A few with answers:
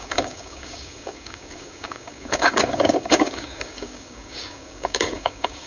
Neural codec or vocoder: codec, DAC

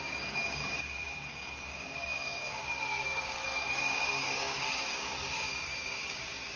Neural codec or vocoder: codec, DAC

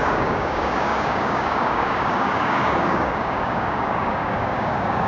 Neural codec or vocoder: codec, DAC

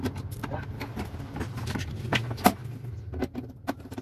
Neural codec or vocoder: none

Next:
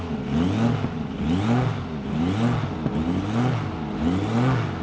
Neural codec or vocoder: none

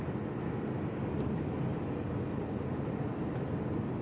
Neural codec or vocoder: none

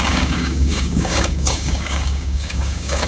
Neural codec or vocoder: codec, DAC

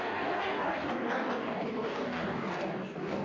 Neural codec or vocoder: codec, DAC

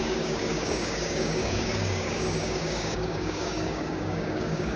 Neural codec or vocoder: codec, DAC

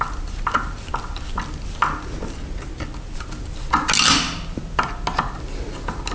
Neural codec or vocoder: none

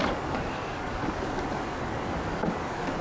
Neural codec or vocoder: codec, DAC